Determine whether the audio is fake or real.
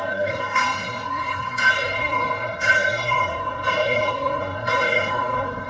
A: fake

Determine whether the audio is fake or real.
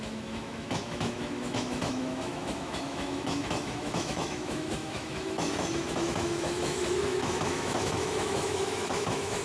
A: fake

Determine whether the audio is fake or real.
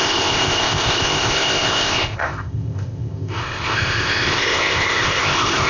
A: fake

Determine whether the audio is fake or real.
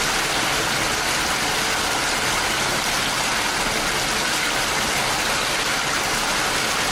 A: real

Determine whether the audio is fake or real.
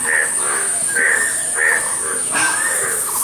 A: fake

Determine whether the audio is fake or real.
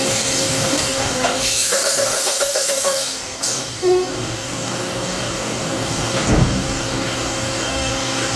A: fake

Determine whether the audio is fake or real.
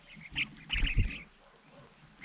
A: real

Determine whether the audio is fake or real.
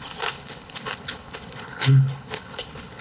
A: fake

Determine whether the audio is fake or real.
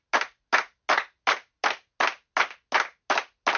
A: real